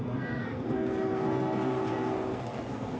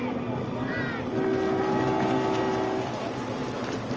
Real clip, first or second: second